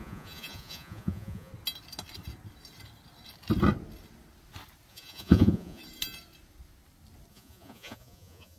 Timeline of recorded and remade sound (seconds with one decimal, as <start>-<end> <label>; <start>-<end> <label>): 0.0-1.5 remade; 1.5-4.9 recorded; 4.9-5.8 remade; 5.8-7.3 recorded; 7.3-8.6 remade